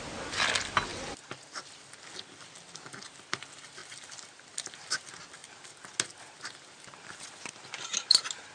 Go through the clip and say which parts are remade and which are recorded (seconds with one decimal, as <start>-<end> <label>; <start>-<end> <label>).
0.0-0.9 recorded; 0.9-2.0 remade; 2.0-3.8 recorded; 3.8-4.9 remade; 4.9-8.5 recorded